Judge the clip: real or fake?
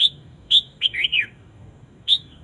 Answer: fake